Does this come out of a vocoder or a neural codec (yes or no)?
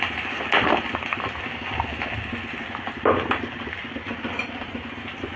no